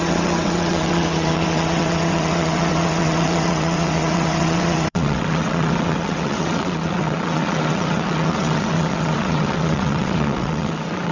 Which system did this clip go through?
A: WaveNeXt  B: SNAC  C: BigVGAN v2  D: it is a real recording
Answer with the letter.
A